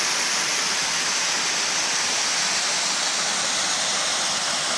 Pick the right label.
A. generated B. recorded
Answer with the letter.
B